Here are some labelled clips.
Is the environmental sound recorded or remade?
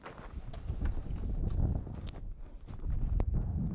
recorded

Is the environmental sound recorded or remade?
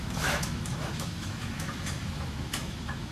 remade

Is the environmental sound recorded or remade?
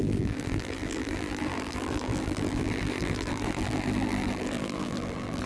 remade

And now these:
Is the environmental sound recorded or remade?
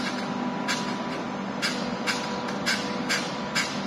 recorded